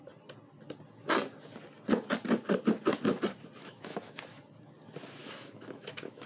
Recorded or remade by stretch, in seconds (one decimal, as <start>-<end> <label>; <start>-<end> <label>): 0.0-3.6 recorded; 3.6-4.2 remade; 4.2-5.2 recorded; 5.2-6.3 remade